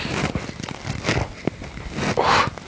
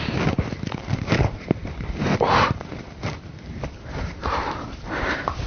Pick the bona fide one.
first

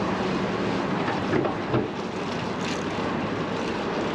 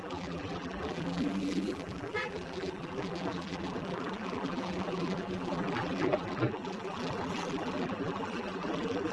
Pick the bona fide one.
first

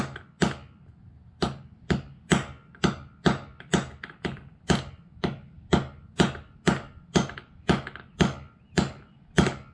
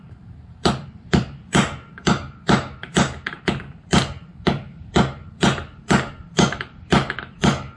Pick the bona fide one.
first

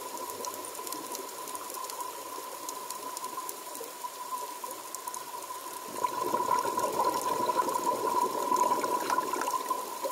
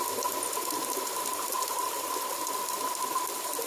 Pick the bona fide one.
second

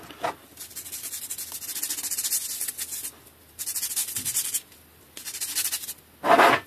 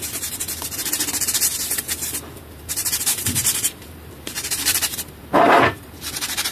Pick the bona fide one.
first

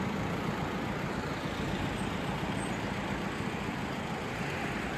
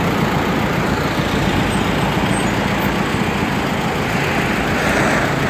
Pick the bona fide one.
second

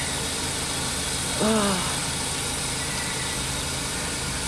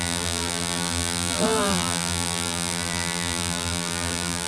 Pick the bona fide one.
first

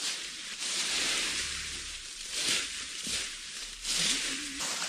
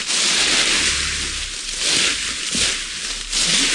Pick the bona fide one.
second